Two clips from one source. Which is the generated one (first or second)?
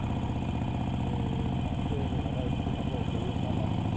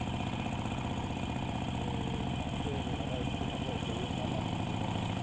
second